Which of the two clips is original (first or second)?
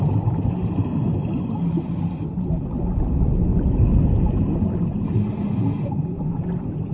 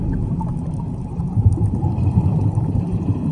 first